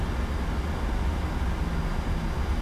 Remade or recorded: recorded